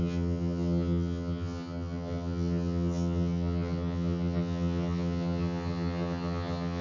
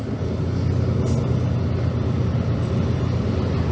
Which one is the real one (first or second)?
second